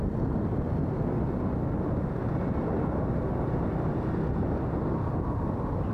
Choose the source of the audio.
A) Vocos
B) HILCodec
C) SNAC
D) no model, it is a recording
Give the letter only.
D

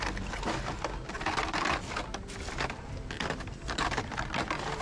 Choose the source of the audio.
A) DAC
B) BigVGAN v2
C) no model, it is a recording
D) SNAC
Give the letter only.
C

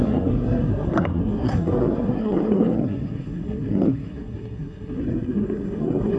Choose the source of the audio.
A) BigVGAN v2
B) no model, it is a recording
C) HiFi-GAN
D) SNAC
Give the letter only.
D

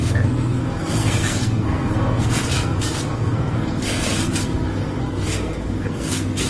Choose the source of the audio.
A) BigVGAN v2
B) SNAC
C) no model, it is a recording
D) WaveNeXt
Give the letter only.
B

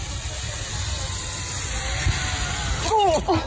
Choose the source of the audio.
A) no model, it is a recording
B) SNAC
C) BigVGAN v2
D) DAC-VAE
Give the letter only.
A